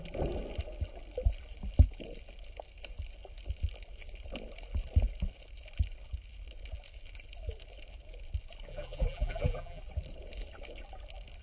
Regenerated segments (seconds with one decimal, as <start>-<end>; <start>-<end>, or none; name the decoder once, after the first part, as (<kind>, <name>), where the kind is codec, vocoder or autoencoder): 8.7-9.8 (vocoder, BigVGAN v2)